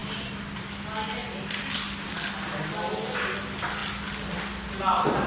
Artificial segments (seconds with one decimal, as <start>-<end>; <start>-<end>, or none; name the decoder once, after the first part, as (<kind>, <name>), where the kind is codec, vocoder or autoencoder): none